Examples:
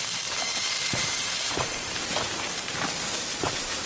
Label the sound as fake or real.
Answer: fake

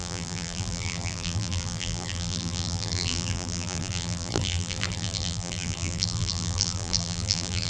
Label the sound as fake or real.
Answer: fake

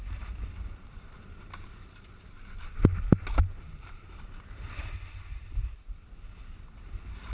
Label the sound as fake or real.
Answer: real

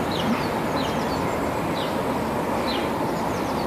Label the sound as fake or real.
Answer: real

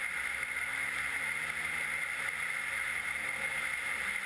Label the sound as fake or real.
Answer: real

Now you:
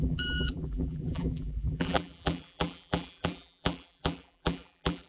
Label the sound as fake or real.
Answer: fake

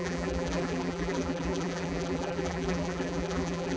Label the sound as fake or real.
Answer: fake